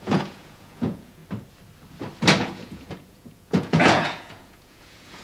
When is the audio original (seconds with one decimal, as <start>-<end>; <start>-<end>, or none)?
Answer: 1.2-2.4

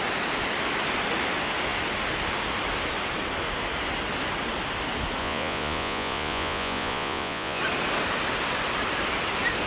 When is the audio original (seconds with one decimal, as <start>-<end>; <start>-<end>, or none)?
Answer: 0.0-5.2; 7.6-9.7